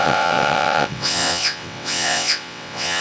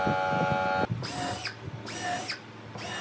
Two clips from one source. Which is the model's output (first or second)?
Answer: first